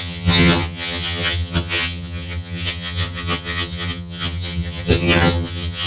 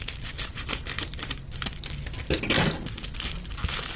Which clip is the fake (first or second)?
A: first